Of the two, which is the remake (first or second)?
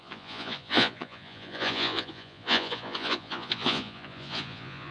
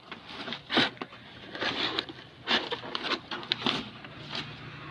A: first